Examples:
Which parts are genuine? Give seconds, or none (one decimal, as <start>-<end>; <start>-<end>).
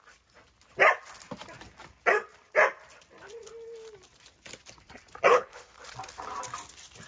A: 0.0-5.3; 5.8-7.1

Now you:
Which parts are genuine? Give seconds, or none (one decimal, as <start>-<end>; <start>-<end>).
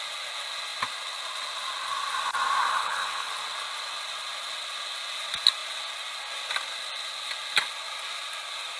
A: 0.0-2.7; 3.3-8.8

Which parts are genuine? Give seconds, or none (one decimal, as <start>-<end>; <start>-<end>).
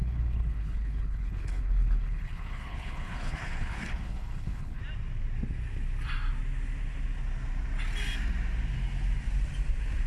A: 4.8-10.1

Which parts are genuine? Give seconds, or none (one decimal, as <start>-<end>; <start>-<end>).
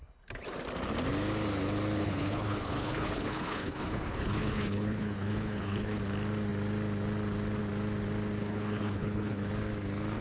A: 0.0-2.0; 6.0-8.4; 9.5-10.2